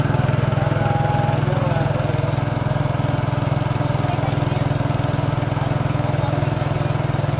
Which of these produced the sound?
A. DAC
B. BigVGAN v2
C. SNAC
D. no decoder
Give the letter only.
D